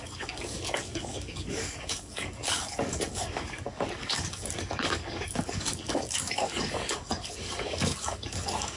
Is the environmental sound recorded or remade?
remade